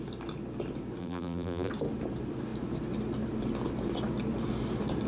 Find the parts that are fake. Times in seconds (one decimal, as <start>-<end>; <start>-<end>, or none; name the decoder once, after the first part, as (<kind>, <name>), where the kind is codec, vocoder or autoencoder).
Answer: 1.0-1.7 (vocoder, BigVGAN v2)